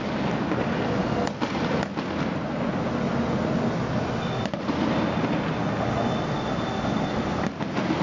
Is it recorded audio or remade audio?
recorded